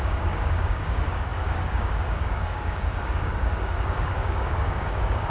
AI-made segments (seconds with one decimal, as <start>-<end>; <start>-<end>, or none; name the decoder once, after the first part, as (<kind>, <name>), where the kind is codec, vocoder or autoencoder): 0.0-5.3 (codec, DAC)